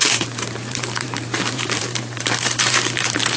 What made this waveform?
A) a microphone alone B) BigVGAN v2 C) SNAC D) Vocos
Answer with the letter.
B